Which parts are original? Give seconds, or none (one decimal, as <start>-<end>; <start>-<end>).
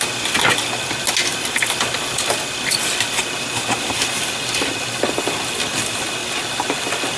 0.0-7.2